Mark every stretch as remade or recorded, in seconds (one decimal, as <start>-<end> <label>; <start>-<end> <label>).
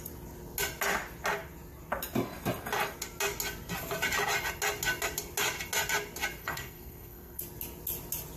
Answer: 0.0-6.4 recorded; 6.4-7.4 remade; 7.4-8.4 recorded